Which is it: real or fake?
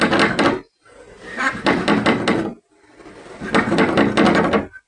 real